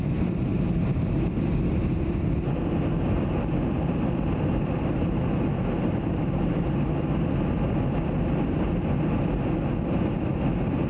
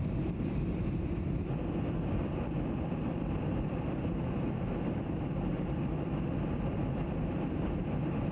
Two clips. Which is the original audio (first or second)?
first